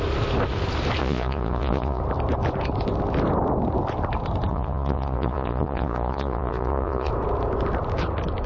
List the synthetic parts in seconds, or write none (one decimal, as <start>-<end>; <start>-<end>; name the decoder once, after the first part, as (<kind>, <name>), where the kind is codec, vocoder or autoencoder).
1.0-2.0 (vocoder, Vocos); 4.5-7.1